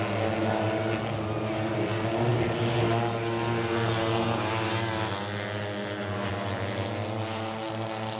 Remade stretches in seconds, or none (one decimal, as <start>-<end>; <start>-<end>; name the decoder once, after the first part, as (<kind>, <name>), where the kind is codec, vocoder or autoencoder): none

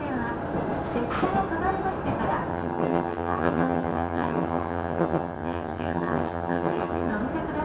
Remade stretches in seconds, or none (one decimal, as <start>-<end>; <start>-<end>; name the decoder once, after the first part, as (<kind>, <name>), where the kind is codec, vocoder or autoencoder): 2.5-7.1 (vocoder, HiFi-GAN)

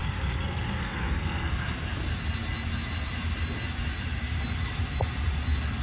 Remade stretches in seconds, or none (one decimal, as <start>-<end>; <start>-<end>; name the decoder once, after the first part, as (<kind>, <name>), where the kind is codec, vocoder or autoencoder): 0.0-1.5 (codec, SNAC)

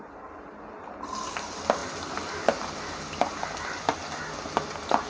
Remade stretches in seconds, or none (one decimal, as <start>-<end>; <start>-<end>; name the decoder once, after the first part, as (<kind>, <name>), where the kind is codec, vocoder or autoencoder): none